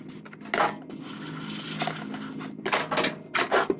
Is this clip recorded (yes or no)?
yes